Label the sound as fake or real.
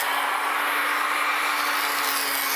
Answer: real